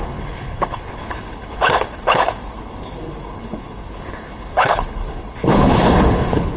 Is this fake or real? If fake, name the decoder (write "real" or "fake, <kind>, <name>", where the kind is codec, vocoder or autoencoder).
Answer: fake, codec, HILCodec